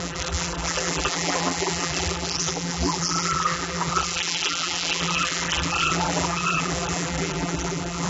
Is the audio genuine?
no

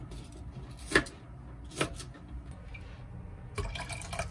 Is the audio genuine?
yes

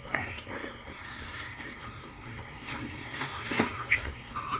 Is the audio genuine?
no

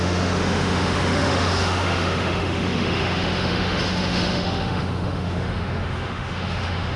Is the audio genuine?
no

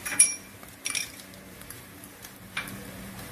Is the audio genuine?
no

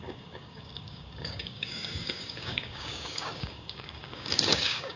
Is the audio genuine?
no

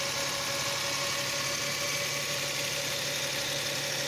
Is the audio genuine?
yes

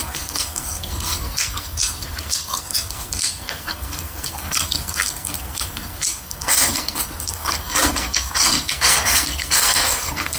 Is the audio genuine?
no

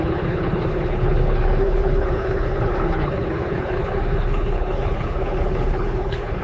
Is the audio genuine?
no